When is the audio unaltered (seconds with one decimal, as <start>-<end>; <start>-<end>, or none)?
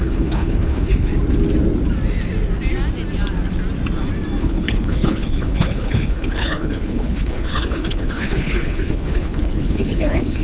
1.1-4.4